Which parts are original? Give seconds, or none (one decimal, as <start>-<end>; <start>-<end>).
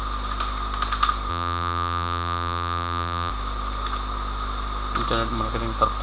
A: 0.0-1.3; 3.3-6.0